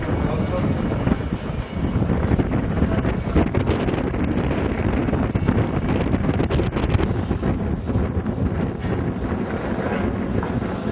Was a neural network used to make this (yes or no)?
no